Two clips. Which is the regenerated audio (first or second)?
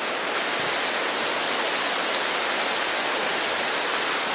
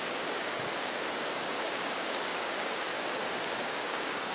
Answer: second